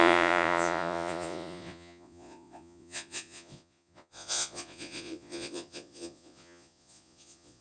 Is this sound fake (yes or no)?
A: yes